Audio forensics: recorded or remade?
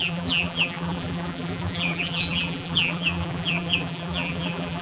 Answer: remade